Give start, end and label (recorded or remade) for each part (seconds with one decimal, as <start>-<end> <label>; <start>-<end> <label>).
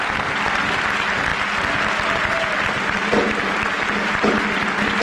0.0-5.0 recorded